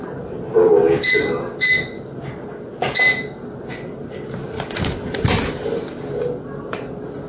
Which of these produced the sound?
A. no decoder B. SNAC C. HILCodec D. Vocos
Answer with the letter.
A